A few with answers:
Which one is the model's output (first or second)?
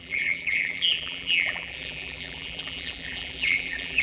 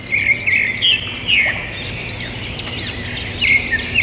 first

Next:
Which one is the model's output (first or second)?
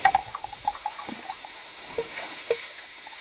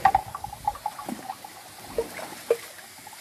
first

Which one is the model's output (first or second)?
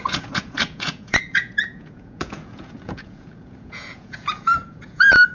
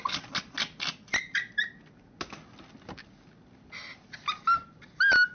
first